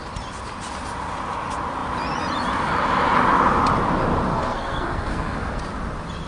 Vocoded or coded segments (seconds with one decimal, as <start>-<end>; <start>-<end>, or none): 4.3-5.6